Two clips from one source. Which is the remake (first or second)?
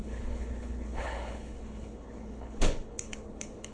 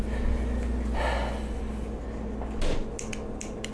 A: first